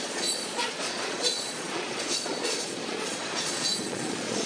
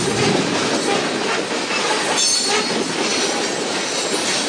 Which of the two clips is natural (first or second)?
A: second